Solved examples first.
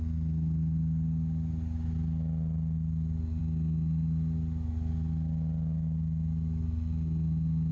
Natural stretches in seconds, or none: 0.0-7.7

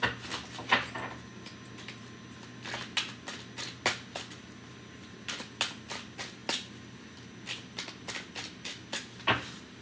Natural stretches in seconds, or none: 0.0-9.8

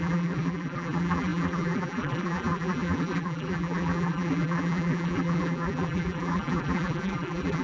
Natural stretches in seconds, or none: none